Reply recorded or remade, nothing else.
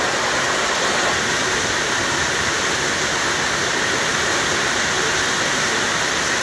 recorded